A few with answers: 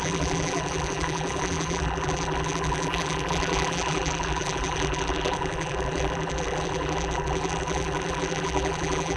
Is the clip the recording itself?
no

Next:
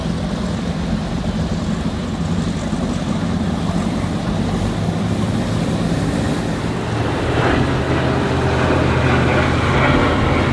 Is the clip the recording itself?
yes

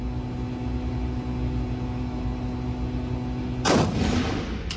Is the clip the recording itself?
yes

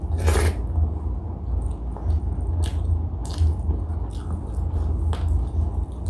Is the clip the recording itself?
yes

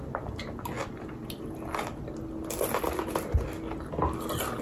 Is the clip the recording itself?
yes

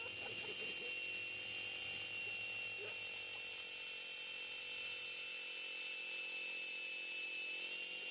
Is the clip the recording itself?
yes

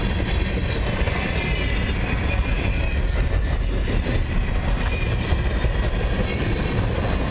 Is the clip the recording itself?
no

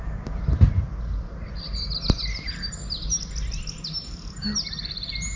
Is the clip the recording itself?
yes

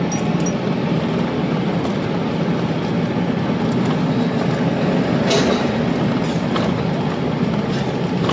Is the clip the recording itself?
yes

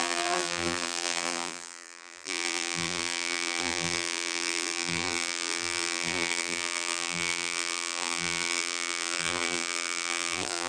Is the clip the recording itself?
no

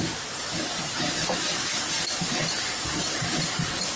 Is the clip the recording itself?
no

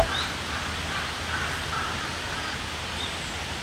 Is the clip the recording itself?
yes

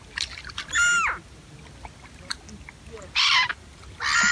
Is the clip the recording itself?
yes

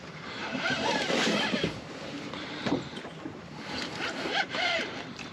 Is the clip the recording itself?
no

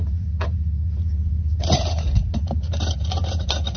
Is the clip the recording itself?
no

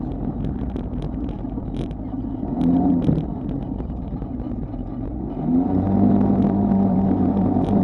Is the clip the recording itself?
no